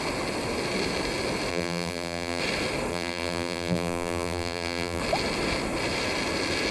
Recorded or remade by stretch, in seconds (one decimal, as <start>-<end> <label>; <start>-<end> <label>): 0.0-1.5 recorded; 1.5-2.4 remade; 2.4-2.9 recorded; 2.9-5.0 remade; 5.0-6.7 recorded